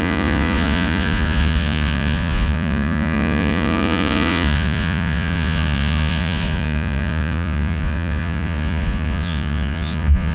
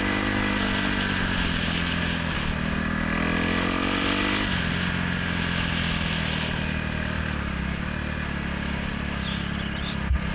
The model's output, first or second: first